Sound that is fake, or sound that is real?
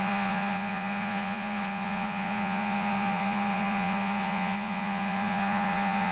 fake